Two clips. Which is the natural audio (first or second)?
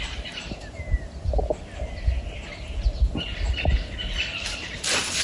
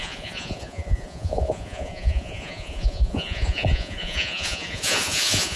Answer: first